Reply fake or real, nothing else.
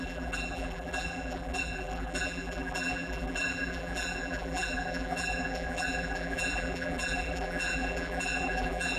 fake